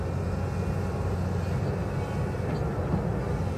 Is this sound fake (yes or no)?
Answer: no